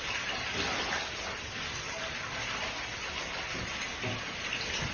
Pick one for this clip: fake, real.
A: real